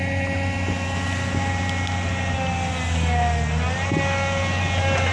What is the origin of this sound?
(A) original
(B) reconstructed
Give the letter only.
A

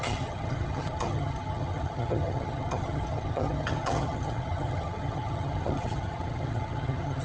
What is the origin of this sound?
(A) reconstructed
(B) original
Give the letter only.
A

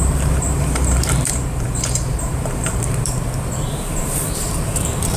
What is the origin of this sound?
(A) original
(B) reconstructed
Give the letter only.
B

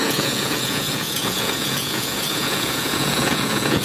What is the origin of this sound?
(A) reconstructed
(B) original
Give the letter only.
A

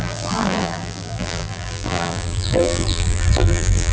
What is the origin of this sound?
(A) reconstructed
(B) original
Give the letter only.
A